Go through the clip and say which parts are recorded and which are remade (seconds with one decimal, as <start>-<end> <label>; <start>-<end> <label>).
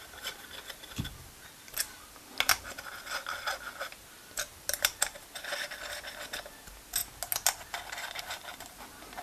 0.0-9.2 recorded